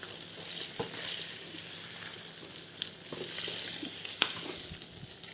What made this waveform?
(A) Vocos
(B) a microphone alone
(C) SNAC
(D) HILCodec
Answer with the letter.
B